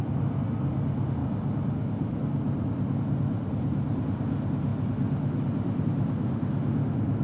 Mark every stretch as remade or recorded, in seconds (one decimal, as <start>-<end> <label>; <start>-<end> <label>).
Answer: 0.0-7.2 recorded